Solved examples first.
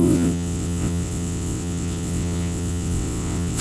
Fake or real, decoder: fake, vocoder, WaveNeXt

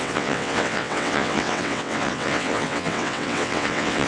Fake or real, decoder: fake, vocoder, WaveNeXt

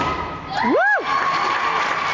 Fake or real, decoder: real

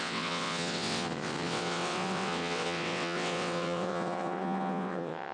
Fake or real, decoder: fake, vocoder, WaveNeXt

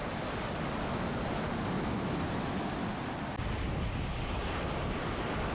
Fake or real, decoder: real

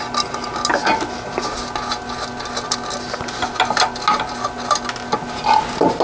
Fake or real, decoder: real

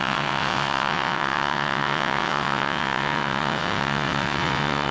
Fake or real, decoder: fake, vocoder, WaveNeXt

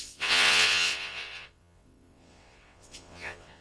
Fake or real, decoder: fake, vocoder, WaveNeXt